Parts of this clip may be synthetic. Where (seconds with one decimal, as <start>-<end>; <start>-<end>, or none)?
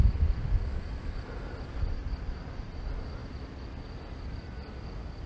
none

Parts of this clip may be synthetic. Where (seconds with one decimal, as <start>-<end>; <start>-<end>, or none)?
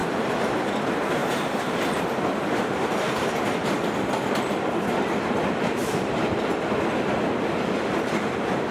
0.0-0.7; 1.2-3.5; 5.8-6.5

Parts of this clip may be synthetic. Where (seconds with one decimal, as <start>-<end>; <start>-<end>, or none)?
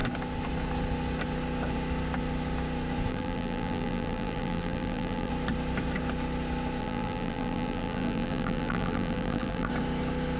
3.1-5.3; 6.8-9.7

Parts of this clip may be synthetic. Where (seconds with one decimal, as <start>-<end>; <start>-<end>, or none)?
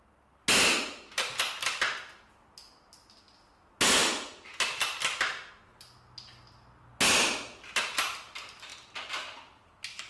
4.0-5.5; 8.7-10.1